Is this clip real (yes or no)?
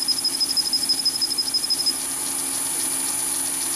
yes